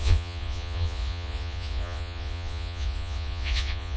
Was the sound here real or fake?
fake